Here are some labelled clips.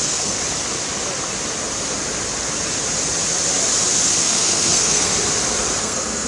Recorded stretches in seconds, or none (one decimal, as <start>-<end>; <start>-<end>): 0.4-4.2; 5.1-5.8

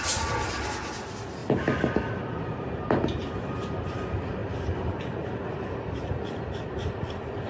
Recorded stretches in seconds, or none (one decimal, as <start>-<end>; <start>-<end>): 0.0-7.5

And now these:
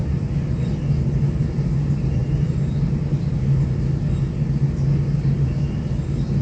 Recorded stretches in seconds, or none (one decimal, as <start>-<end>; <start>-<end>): 0.0-6.4